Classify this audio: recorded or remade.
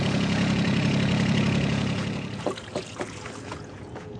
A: remade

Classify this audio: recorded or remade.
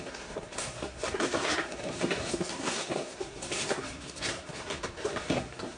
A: remade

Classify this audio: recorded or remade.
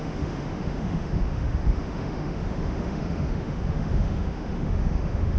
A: remade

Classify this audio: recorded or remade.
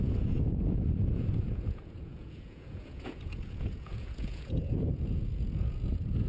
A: remade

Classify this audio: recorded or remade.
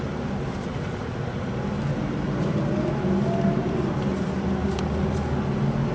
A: recorded